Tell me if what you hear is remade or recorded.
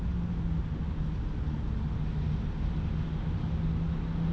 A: recorded